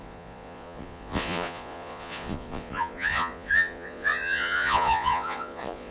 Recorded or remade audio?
remade